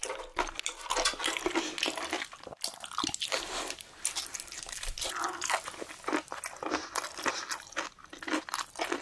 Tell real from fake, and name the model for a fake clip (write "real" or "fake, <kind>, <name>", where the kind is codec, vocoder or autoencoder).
real